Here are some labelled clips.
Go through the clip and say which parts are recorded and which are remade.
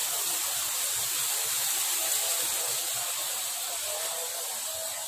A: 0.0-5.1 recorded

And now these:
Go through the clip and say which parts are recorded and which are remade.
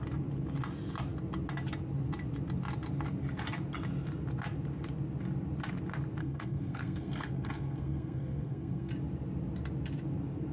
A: 0.0-6.2 recorded; 6.2-8.9 remade; 8.9-10.5 recorded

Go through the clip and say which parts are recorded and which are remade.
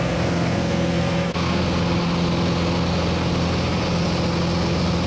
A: 0.0-1.6 remade; 1.6-5.1 recorded